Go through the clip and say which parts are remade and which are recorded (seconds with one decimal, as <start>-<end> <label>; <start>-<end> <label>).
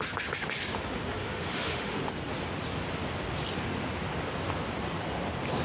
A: 0.0-1.2 recorded; 1.2-2.0 remade; 2.0-5.6 recorded